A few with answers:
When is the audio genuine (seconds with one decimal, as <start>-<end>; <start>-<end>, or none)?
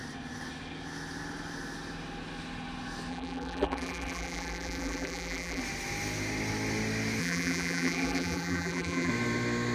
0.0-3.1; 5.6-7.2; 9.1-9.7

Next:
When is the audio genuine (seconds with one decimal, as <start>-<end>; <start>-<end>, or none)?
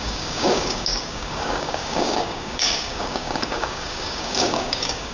none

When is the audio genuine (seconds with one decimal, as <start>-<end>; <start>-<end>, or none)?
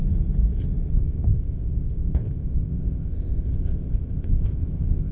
0.0-0.9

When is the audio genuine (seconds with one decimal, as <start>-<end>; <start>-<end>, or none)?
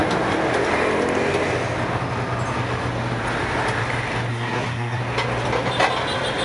0.0-4.3; 5.0-6.4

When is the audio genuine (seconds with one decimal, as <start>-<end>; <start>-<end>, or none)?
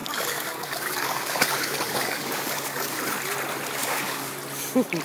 3.0-3.8; 4.3-5.0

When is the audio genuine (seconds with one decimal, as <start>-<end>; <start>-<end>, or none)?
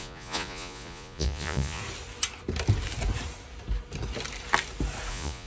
1.8-5.1